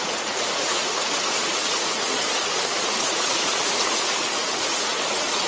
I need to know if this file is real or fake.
fake